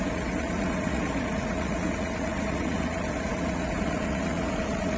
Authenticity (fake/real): fake